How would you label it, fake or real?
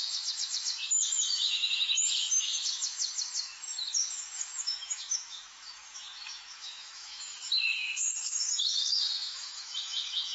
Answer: fake